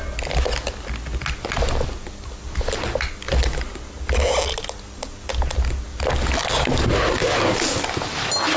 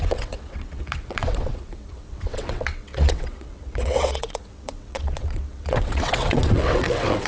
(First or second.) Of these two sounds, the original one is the first